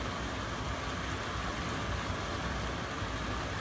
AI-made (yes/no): no